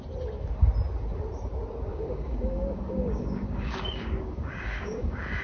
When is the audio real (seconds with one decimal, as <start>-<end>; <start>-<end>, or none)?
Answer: 0.0-1.9